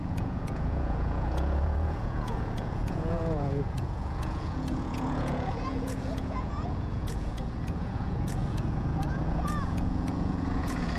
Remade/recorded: remade